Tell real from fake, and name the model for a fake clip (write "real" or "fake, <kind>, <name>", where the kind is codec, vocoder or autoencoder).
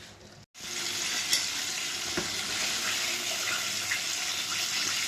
real